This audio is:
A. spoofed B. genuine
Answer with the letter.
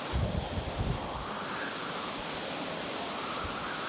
B